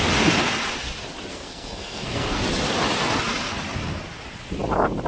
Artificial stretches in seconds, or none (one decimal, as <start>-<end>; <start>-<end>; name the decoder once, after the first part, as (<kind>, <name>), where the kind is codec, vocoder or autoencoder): 1.3-2.4 (codec, SNAC)